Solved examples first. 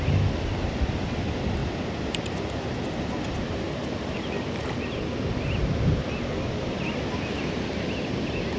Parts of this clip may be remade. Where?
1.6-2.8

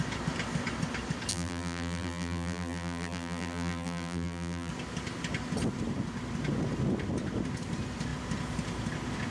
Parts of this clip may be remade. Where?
1.3-4.7

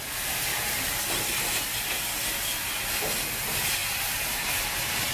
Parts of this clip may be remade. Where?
0.5-1.0; 3.8-5.1

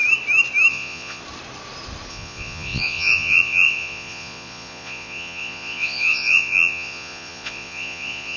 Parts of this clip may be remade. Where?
0.7-1.2; 2.1-8.4

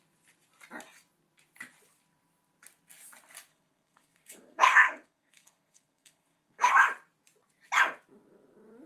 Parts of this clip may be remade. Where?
3.5-6.7

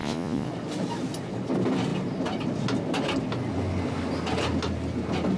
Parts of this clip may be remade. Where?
0.0-0.5

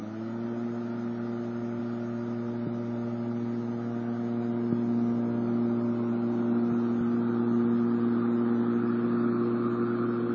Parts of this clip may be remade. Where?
none